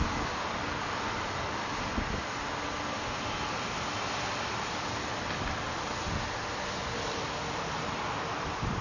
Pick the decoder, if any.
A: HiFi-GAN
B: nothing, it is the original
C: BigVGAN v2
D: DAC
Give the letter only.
B